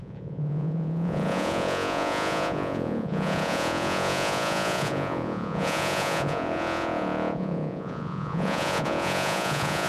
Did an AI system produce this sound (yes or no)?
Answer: yes